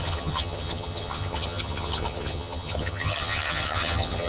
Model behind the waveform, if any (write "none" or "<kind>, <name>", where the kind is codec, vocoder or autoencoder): vocoder, HiFi-GAN